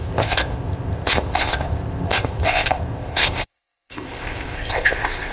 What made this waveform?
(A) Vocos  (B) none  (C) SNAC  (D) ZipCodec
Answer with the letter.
D